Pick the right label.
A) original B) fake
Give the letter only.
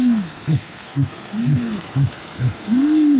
B